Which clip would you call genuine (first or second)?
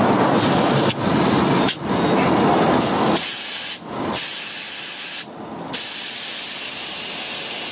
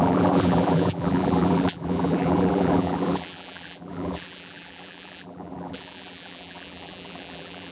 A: first